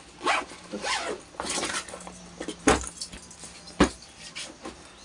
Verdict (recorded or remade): recorded